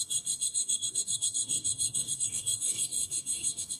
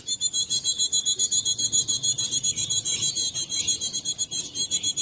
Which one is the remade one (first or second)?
first